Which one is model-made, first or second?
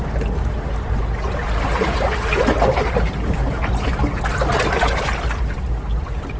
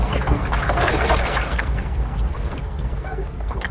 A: second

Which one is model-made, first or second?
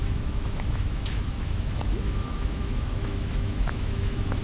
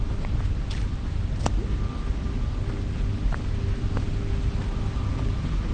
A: first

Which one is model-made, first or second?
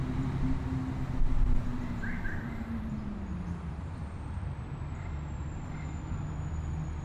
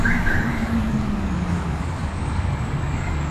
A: second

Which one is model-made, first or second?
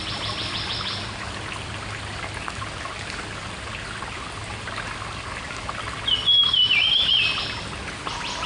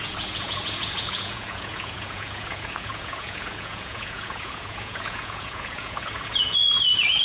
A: second